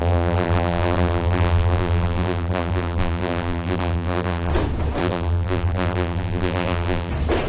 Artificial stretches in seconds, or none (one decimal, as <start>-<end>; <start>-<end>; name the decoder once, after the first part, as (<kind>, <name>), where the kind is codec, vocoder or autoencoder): 0.0-4.5 (vocoder, BigVGAN v2); 5.0-7.1